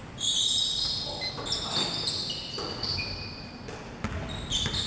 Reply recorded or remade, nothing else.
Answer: recorded